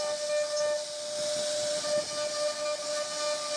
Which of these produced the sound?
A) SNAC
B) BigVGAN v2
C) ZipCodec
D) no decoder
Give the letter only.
D